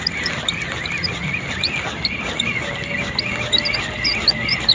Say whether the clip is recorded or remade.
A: recorded